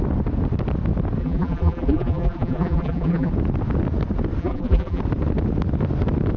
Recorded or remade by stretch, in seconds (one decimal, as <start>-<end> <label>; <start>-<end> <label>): 0.0-1.2 recorded; 1.2-3.3 remade; 3.3-4.4 recorded; 4.4-5.0 remade; 5.0-6.4 recorded